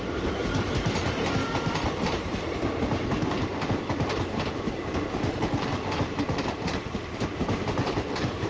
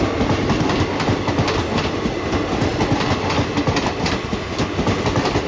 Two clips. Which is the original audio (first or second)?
second